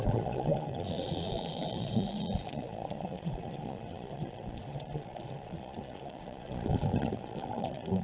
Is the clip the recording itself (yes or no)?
no